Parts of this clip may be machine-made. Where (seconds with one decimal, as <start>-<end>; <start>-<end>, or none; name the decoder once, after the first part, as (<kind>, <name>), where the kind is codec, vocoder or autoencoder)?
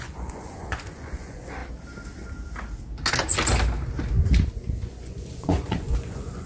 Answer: 0.0-1.6 (vocoder, Vocos); 4.8-6.5